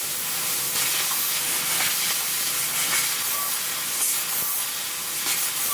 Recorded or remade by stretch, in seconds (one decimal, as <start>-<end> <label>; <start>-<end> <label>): 0.0-0.9 remade; 0.9-4.3 recorded; 4.3-5.7 remade